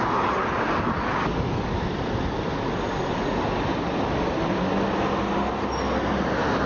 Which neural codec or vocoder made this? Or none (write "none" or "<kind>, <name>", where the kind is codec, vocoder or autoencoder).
none